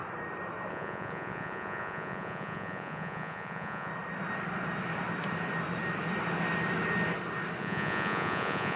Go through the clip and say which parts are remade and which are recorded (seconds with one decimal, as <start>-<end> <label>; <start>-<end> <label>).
0.0-0.7 recorded; 0.7-3.9 remade; 3.9-7.6 recorded; 7.6-8.8 remade